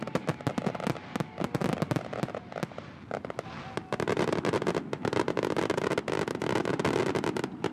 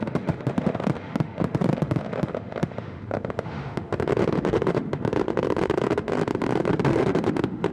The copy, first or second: second